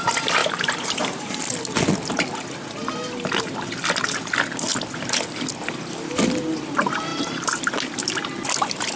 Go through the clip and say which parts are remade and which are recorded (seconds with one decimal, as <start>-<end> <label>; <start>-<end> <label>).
0.0-0.4 recorded; 0.4-1.3 remade; 1.3-7.1 recorded; 7.1-7.9 remade; 7.9-9.0 recorded